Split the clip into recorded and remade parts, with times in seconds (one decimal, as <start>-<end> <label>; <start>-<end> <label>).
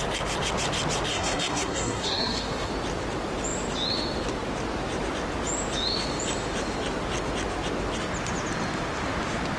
0.0-1.1 recorded; 1.1-2.7 remade; 2.7-9.6 recorded